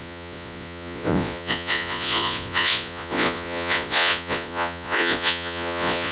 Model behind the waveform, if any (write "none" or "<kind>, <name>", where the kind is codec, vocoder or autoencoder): vocoder, Vocos